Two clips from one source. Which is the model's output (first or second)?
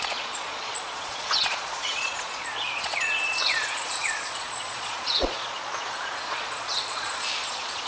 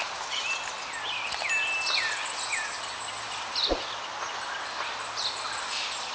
first